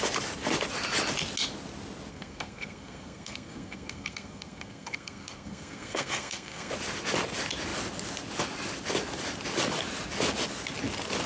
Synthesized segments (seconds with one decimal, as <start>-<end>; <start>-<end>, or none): 2.1-6.7